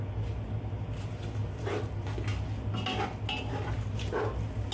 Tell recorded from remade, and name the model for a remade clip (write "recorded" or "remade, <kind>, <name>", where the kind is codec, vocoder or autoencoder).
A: recorded